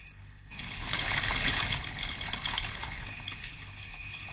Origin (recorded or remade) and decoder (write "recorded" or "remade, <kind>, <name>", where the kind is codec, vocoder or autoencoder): remade, codec, HILCodec